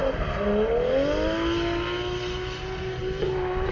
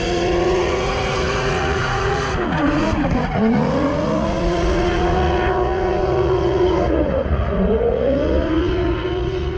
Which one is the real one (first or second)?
first